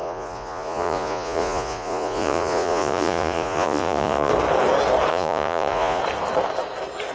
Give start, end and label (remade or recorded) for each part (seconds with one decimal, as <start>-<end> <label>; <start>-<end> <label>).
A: 0.0-4.3 remade; 4.3-5.1 recorded; 5.1-6.0 remade; 6.0-7.1 recorded